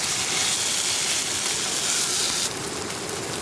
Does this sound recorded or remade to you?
recorded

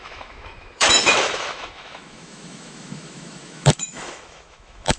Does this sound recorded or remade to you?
remade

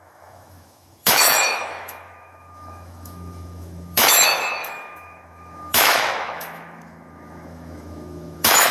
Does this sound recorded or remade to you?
remade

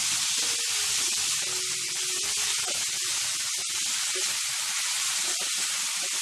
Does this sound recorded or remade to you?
recorded